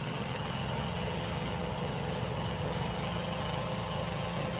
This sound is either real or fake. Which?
fake